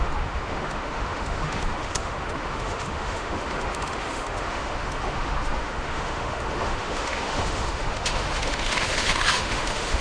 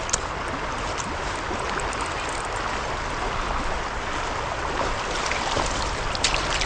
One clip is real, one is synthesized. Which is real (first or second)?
second